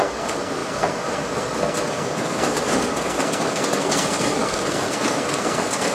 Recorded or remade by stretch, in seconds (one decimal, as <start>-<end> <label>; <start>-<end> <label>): 0.0-5.9 remade